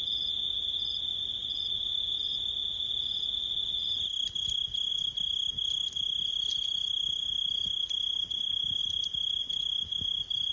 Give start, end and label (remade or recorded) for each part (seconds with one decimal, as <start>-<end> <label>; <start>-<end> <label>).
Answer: 0.0-1.4 recorded; 1.4-2.5 remade; 2.5-10.5 recorded